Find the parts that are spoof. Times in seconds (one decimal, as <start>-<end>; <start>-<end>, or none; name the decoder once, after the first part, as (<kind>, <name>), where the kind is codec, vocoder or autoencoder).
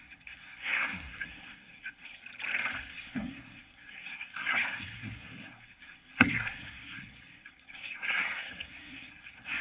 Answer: 0.0-2.2 (codec, SNAC); 2.9-9.6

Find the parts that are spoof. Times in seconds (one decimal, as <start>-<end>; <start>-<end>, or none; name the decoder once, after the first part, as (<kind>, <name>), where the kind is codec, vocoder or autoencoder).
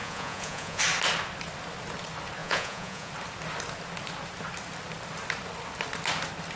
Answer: 0.0-0.8 (vocoder, Vocos); 2.4-3.1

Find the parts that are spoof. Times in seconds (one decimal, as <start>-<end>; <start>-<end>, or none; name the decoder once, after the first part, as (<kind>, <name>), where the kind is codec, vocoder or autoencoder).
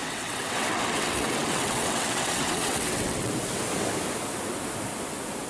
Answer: 0.0-3.3 (vocoder, WaveNeXt)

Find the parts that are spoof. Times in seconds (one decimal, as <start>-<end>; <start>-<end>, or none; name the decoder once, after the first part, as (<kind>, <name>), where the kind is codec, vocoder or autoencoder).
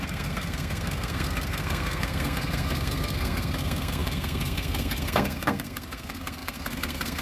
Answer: 0.0-7.2 (codec, SNAC)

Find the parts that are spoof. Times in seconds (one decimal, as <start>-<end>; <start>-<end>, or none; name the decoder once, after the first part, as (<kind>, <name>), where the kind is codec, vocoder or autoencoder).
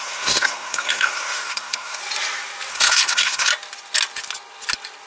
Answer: 0.0-2.0 (codec, SNAC); 2.7-3.5